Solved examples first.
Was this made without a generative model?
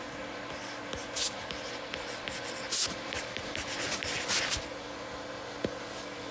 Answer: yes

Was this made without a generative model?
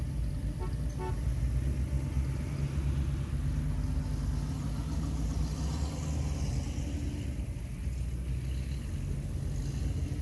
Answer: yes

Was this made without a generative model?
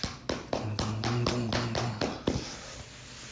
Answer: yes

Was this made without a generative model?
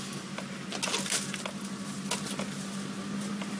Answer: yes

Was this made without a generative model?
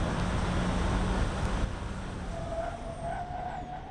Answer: yes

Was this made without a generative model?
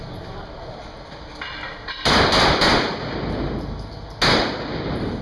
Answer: yes